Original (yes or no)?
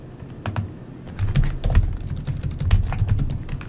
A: yes